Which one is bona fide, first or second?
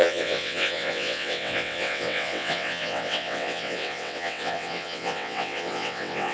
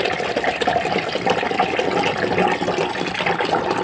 second